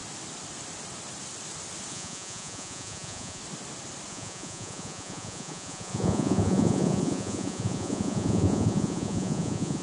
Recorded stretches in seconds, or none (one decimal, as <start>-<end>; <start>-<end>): 0.0-1.9; 3.4-4.1